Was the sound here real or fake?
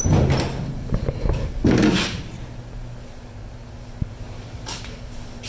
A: real